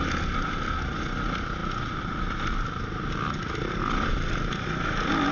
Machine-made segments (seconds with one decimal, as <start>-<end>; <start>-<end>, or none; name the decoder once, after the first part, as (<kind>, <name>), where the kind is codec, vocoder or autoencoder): none